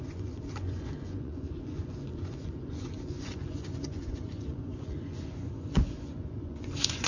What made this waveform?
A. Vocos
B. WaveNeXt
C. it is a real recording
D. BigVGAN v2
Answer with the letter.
A